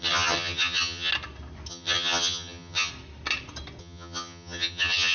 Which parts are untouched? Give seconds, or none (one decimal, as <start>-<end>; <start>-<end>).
1.1-1.7; 2.9-3.8